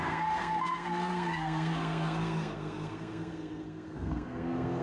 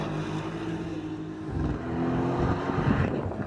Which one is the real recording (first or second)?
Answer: second